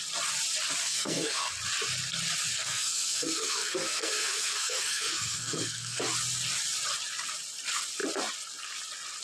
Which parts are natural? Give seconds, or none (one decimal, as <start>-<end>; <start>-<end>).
0.0-0.8; 1.5-2.5; 6.0-9.2